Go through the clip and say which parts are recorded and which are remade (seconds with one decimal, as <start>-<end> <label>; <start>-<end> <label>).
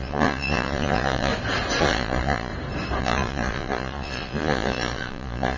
0.0-1.3 remade; 1.3-1.8 recorded; 1.8-2.5 remade; 2.5-3.0 recorded; 3.0-5.6 remade